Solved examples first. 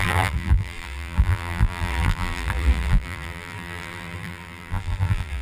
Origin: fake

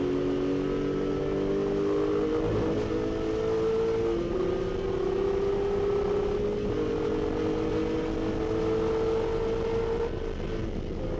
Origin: real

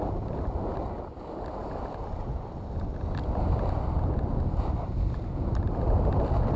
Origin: real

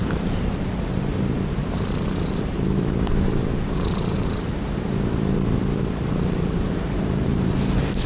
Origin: fake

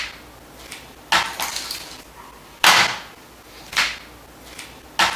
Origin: real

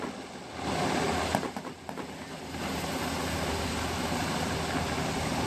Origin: real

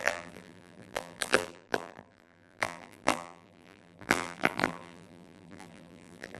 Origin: fake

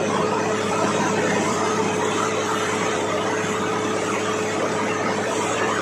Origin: fake